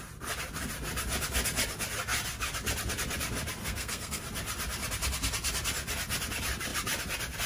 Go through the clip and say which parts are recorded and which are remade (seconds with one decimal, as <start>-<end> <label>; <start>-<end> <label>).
0.0-3.6 recorded; 3.6-4.2 remade; 4.2-7.5 recorded